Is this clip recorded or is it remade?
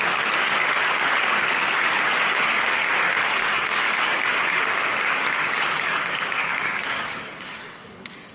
remade